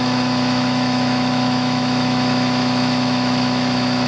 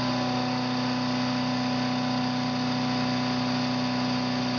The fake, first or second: first